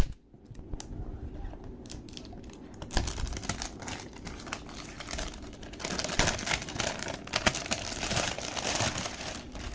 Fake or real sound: real